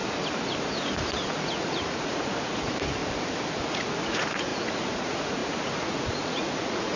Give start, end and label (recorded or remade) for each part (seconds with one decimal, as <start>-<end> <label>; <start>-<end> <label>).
0.0-0.6 recorded; 0.6-3.0 remade; 3.0-3.5 recorded; 3.5-7.0 remade

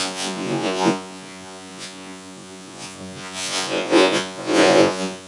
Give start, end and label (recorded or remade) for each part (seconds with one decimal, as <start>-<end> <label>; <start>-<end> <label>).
0.0-5.3 remade